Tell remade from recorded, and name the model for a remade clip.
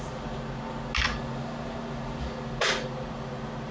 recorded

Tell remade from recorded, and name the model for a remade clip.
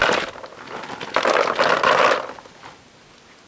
recorded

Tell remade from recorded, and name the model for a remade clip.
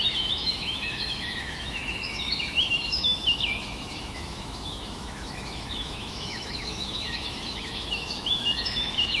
remade, autoencoder, DAC-VAE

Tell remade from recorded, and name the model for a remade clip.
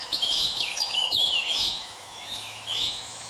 remade, autoencoder, DAC-VAE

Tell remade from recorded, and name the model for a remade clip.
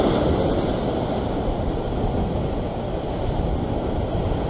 recorded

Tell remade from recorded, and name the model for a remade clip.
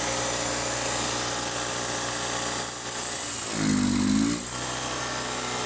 recorded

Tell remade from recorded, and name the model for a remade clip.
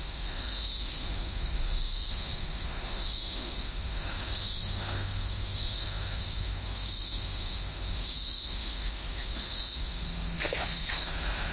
remade, autoencoder, DAC-VAE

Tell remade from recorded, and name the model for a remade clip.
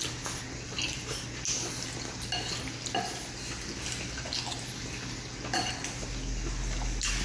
recorded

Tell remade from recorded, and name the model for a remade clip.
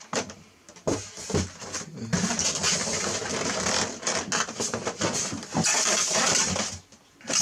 recorded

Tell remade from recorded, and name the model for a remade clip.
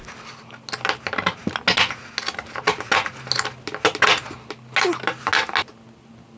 recorded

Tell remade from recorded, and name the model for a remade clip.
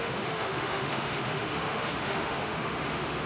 remade, autoencoder, DAC-VAE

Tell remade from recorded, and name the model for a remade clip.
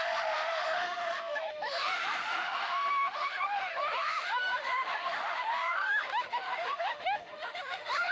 remade, autoencoder, DAC-VAE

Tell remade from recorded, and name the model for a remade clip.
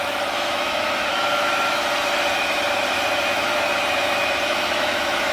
remade, autoencoder, DAC-VAE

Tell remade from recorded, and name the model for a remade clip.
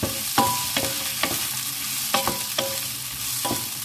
recorded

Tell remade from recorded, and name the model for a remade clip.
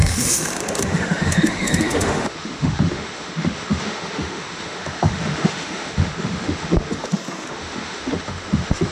remade, autoencoder, DAC-VAE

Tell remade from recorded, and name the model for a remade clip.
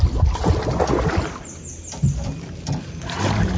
recorded